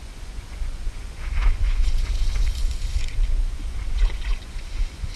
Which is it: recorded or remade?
remade